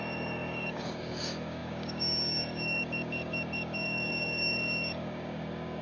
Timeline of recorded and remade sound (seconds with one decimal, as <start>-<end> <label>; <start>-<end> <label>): 0.0-5.8 remade

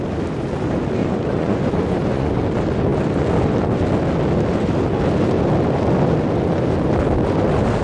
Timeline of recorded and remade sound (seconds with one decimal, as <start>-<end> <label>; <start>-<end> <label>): 0.0-1.0 recorded; 1.0-2.4 remade; 2.4-7.8 recorded

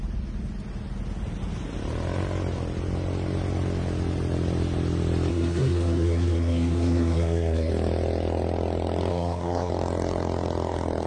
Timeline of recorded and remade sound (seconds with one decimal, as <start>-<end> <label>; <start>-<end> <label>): 0.0-5.3 recorded; 5.3-7.7 remade; 7.7-9.1 recorded; 9.1-9.7 remade; 9.7-11.1 recorded

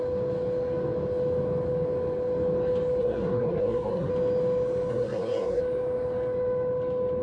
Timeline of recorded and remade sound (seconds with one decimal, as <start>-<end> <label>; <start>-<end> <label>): 0.0-3.0 recorded; 3.0-4.1 remade; 4.1-4.9 recorded; 4.9-5.6 remade; 5.6-7.2 recorded

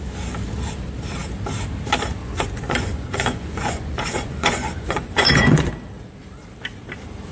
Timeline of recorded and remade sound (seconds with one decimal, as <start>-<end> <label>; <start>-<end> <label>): 0.0-2.2 recorded; 2.2-5.7 remade; 5.7-7.3 recorded

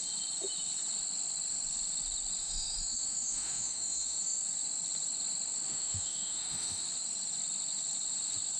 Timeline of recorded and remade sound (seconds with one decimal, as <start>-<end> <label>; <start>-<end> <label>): 0.0-2.4 recorded; 2.4-4.4 remade; 4.4-5.7 recorded; 5.7-6.8 remade; 6.8-8.6 recorded

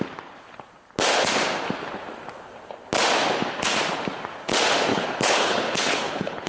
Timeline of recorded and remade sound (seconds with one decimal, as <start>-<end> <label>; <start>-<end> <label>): 0.0-4.9 recorded; 4.9-6.5 remade